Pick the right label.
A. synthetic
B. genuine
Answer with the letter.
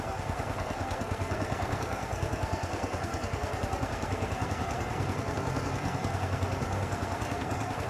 A